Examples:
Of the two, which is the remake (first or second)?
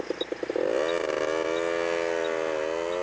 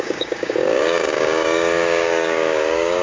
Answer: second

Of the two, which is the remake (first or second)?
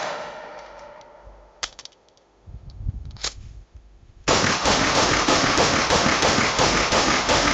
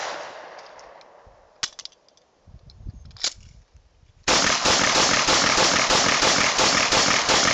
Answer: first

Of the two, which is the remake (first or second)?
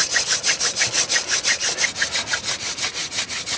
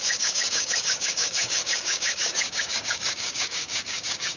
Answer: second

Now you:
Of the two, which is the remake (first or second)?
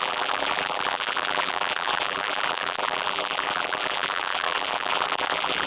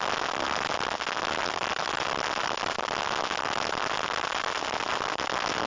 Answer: first